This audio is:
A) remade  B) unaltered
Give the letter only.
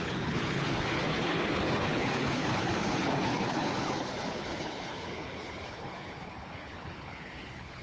A